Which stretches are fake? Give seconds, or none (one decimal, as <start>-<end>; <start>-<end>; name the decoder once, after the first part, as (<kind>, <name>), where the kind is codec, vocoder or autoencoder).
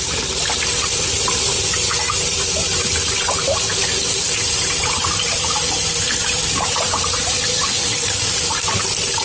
none